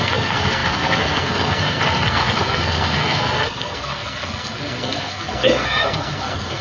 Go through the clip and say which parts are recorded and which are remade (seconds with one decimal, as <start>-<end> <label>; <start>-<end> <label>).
0.0-6.6 remade